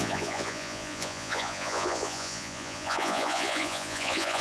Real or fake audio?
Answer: fake